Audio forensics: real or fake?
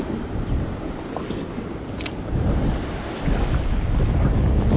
real